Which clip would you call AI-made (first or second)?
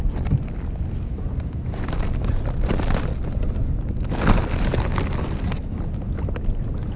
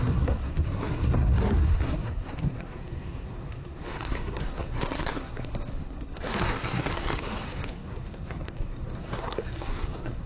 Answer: second